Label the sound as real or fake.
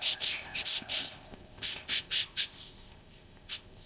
fake